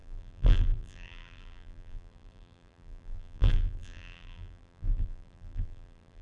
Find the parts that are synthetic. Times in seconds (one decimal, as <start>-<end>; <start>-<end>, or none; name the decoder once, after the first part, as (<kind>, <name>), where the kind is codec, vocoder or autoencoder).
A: 0.0-6.2 (vocoder, BigVGAN v2)